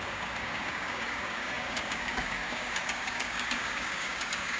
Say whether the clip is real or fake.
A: fake